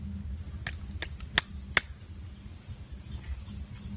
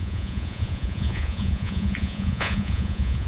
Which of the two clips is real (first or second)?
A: first